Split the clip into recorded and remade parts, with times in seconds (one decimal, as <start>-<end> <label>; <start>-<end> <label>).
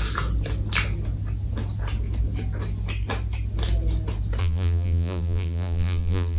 0.0-4.4 recorded; 4.4-6.4 remade